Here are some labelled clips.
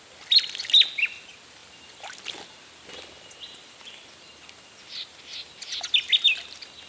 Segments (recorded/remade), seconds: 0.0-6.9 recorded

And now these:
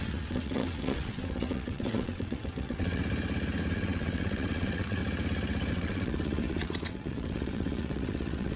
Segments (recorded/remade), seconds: 0.0-3.0 remade; 3.0-3.7 recorded; 3.7-5.0 remade; 5.0-5.7 recorded; 5.7-8.6 remade